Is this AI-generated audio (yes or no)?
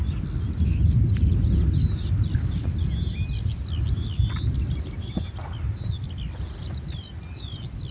no